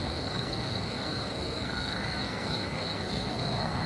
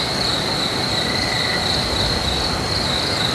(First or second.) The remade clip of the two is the first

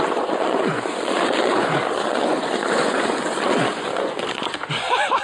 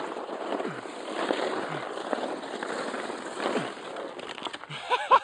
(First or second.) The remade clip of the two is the first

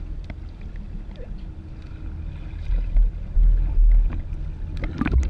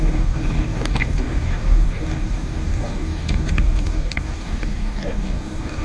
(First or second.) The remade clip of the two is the second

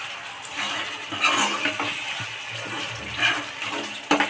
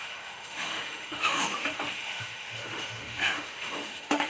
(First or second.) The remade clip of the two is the second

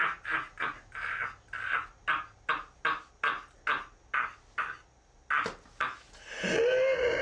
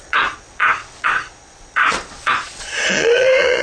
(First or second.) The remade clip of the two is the second